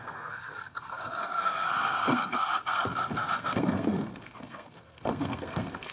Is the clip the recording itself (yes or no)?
no